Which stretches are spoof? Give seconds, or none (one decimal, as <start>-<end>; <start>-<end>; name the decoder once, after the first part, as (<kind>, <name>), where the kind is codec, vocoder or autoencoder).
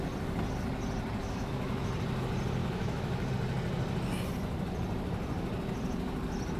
1.2-1.9 (autoencoder, DAC-VAE); 2.6-3.3